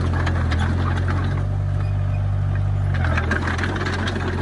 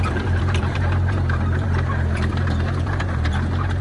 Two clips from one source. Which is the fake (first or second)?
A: second